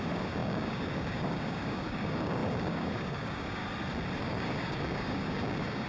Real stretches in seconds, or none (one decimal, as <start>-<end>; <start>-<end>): 3.6-4.2

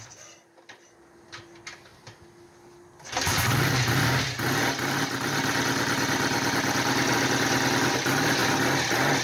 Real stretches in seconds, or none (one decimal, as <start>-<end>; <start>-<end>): 0.0-9.2